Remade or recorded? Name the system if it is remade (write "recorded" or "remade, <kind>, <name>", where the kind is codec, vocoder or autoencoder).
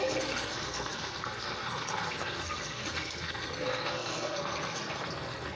remade, codec, SNAC